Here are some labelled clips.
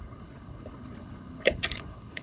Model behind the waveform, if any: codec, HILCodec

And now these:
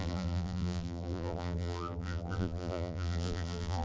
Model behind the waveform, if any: vocoder, BigVGAN v2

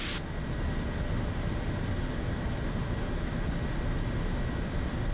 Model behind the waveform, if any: none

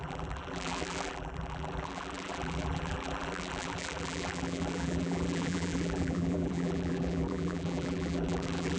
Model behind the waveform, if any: vocoder, BigVGAN v2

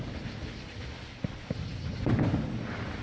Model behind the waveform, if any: none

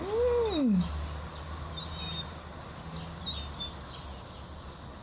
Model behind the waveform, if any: none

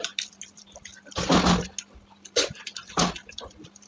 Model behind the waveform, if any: none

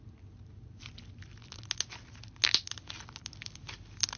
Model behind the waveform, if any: none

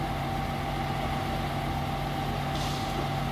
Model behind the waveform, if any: none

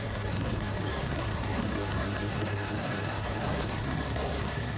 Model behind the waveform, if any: codec, SNAC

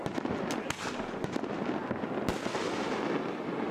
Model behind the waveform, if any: none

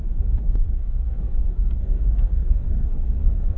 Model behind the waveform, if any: codec, SNAC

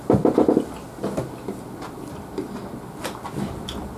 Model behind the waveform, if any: none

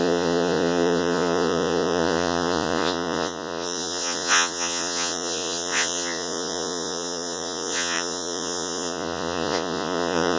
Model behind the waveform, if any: vocoder, Vocos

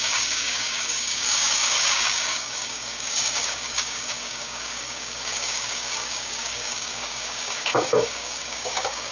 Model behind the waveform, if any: codec, DAC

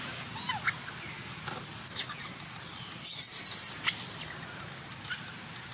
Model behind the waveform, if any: none